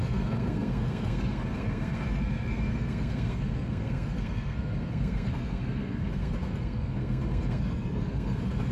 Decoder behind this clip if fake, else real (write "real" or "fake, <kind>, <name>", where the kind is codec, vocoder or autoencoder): fake, codec, SNAC